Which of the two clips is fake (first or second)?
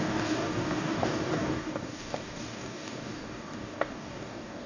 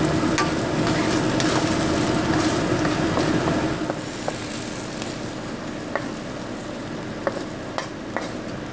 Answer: first